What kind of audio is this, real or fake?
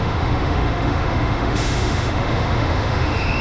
fake